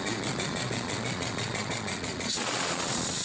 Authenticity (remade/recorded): remade